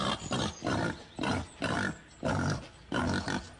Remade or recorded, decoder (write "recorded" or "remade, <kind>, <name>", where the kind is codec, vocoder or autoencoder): recorded